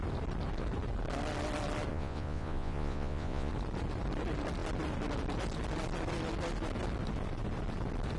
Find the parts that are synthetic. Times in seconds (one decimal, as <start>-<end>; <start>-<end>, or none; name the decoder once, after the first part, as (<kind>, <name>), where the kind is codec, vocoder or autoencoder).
1.9-3.5 (vocoder, Vocos)